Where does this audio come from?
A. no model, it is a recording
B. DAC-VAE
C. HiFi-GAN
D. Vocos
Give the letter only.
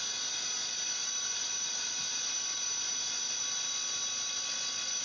A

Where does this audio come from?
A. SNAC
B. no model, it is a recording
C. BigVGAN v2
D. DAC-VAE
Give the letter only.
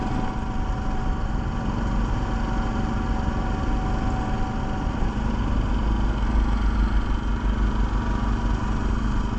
B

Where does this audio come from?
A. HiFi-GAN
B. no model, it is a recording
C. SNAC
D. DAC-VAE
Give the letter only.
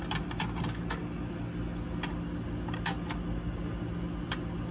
B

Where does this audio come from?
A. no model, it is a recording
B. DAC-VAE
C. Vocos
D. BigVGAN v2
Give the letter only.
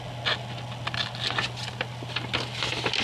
A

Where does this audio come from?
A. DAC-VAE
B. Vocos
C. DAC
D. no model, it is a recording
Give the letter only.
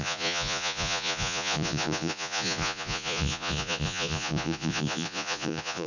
B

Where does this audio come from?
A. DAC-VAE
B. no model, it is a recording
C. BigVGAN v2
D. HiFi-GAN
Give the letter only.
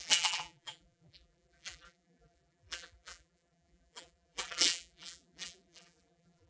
C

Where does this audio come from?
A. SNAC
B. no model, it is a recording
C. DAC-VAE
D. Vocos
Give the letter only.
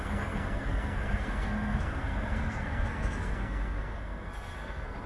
A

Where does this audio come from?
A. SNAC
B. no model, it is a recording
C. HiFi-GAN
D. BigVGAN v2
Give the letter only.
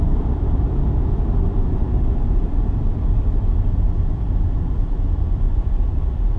D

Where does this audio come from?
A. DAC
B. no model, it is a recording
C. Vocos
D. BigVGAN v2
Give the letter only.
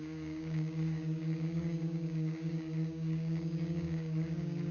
A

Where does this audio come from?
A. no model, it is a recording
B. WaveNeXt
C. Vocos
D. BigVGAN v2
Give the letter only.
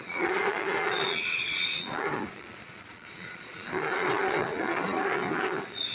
C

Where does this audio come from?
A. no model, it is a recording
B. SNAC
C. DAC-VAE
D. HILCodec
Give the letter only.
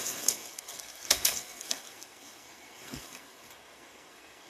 B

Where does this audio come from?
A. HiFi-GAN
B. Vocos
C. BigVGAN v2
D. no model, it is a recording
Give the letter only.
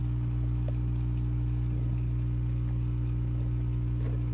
D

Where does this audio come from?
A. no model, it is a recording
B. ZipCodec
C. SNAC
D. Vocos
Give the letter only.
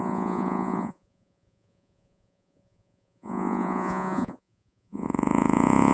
D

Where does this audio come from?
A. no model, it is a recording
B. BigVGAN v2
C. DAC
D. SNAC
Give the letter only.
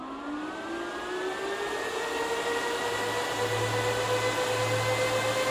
A